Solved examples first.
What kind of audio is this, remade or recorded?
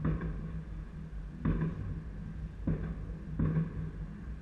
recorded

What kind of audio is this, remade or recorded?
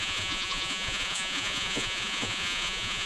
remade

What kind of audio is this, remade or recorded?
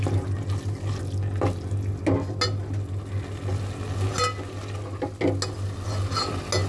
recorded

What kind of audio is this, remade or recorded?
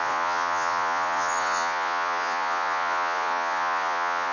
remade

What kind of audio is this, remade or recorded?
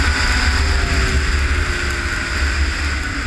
recorded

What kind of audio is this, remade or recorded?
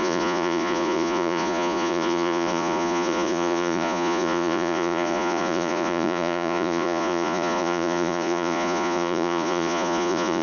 remade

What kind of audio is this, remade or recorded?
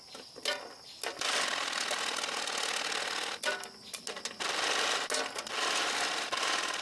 recorded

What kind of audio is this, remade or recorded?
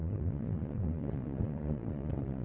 remade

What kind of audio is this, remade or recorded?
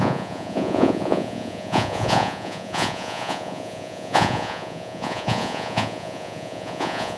remade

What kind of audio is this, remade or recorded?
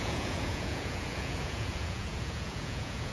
remade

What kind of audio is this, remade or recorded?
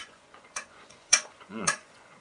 remade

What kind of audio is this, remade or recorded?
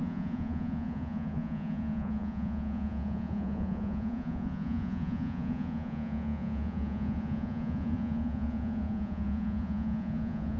remade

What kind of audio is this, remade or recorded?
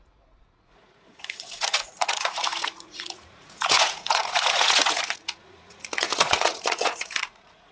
remade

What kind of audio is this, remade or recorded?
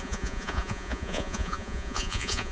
remade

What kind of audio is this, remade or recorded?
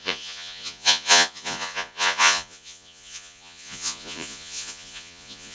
remade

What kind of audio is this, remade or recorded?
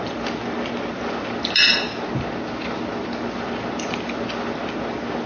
recorded